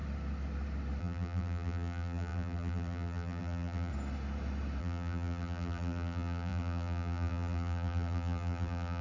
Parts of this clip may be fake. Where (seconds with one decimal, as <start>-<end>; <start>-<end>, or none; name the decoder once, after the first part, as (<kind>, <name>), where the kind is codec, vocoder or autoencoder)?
1.0-3.9 (vocoder, BigVGAN v2); 4.8-9.0